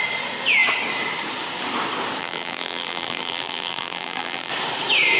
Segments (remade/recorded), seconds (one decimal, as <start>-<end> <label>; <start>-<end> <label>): 0.0-2.2 recorded; 2.2-4.5 remade; 4.5-5.2 recorded